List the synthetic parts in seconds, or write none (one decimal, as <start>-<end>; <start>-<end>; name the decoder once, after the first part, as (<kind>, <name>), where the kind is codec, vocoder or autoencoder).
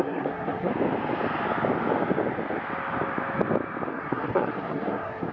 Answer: 0.0-0.7 (codec, SNAC); 3.9-5.3